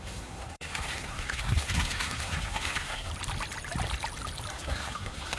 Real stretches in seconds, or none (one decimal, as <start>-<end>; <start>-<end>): 3.1-4.5